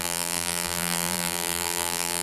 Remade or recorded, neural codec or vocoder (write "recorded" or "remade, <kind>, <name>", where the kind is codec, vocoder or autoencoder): remade, vocoder, BigVGAN v2